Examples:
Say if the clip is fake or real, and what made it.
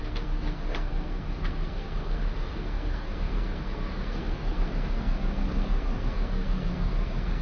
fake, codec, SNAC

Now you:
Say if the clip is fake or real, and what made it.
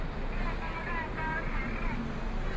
real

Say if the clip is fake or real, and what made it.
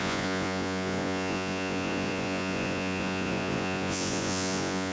fake, vocoder, Vocos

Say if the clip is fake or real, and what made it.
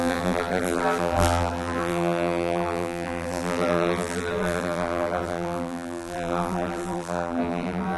fake, vocoder, BigVGAN v2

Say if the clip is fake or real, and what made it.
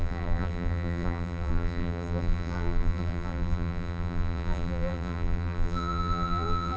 fake, vocoder, BigVGAN v2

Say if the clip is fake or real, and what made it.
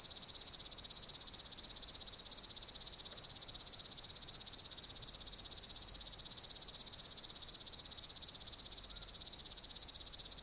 real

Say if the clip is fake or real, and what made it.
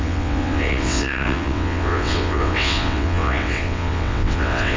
fake, vocoder, WaveNeXt